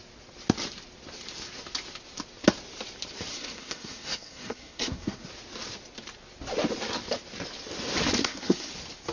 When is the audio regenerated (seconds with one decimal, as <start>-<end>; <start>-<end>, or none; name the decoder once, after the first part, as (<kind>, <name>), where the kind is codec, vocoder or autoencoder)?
3.3-5.3 (codec, SNAC); 8.2-8.7